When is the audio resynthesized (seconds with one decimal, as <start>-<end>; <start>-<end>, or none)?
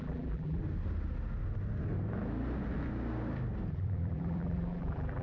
0.0-0.6; 3.7-5.2